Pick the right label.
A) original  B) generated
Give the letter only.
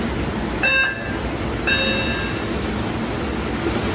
A